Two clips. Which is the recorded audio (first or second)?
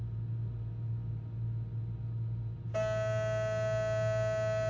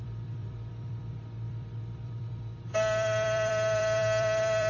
first